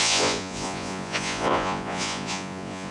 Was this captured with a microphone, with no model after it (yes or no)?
no